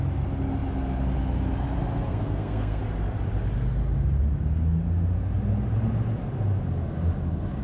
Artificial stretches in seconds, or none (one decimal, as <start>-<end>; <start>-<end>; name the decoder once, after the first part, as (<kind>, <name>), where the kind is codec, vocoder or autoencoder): 2.1-2.8 (codec, SNAC)